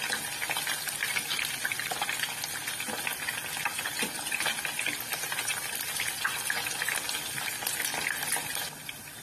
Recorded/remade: recorded